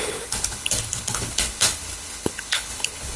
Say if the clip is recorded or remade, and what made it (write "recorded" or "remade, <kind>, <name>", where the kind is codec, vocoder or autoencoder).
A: remade, codec, HILCodec